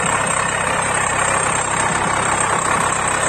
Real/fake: real